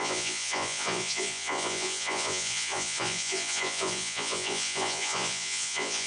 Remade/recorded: remade